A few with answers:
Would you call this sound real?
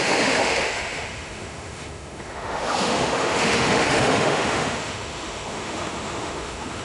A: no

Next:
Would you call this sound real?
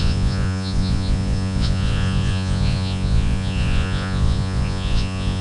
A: no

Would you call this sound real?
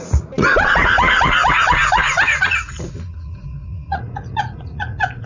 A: no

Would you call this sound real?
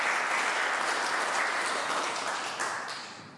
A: yes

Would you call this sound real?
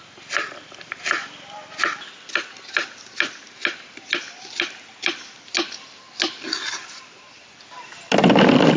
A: yes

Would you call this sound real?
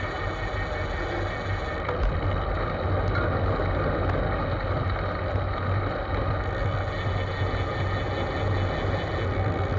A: yes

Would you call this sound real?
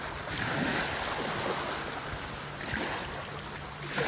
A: yes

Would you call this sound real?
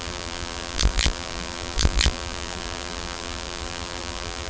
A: no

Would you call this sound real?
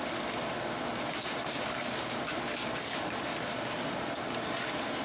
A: yes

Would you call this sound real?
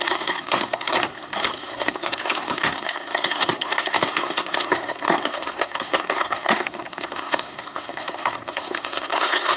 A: no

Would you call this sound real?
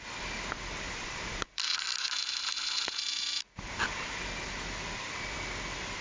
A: yes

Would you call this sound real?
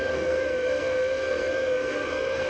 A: no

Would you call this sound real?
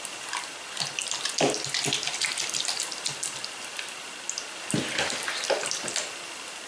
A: yes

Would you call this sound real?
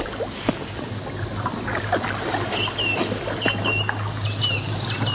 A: yes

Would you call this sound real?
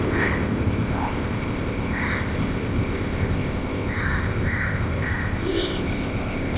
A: no